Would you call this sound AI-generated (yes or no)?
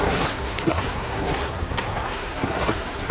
yes